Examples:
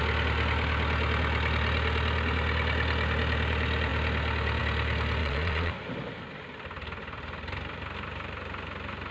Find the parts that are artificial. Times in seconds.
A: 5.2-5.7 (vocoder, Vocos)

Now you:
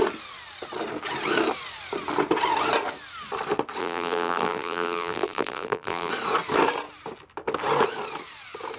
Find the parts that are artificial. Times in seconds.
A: 3.8-6.1 (vocoder, BigVGAN v2)

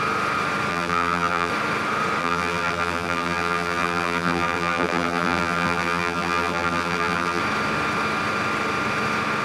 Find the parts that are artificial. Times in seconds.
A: 0.7-1.5 (vocoder, BigVGAN v2); 2.2-7.4